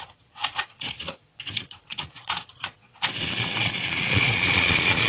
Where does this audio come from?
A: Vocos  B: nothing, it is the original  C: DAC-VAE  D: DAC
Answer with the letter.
A